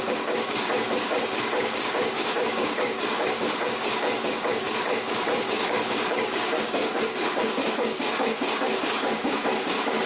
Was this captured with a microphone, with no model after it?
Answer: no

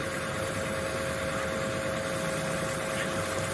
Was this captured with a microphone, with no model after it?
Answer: yes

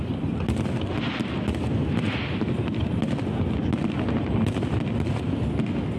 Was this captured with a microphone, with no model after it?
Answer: yes